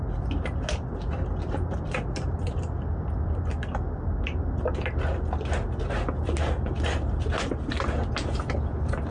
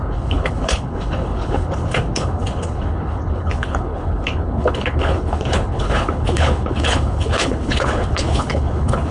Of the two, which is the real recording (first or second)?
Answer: first